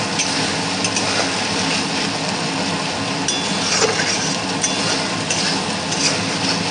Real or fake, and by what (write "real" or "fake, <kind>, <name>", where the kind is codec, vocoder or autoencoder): real